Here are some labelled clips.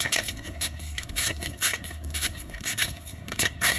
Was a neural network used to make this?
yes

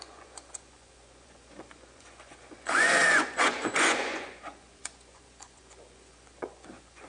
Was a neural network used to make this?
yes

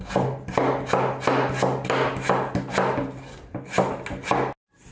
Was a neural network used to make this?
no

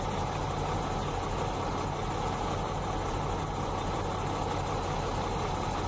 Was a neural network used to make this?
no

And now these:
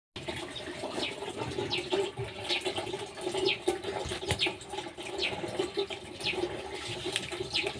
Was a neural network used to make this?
no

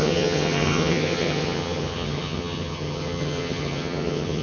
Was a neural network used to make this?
yes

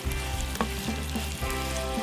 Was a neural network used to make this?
no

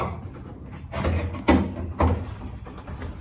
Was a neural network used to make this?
no